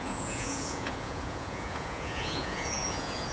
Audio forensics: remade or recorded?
remade